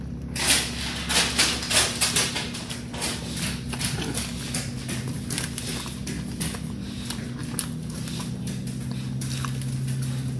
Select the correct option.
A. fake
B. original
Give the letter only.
B